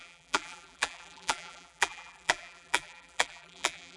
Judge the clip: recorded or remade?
remade